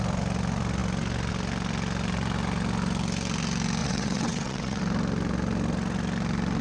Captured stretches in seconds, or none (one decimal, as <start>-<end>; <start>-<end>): 0.0-3.8; 4.8-6.6